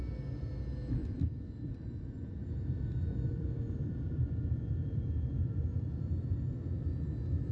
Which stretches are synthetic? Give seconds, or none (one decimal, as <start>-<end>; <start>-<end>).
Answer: 1.0-5.3